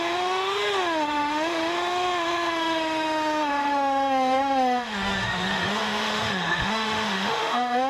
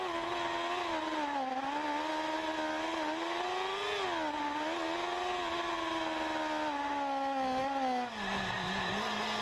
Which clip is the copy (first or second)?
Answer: first